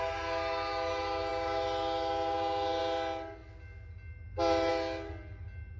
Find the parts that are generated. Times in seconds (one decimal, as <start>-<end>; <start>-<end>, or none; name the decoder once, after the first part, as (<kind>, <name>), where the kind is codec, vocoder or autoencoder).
none